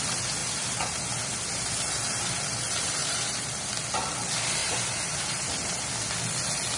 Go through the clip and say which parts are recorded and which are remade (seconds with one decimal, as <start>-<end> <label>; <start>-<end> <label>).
0.0-0.4 recorded; 0.4-2.4 remade; 2.4-3.0 recorded; 3.0-3.7 remade; 3.7-4.6 recorded; 4.6-5.9 remade; 5.9-6.8 recorded